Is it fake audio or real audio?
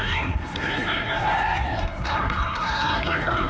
fake